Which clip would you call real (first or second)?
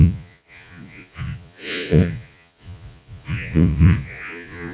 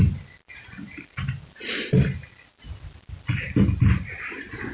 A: second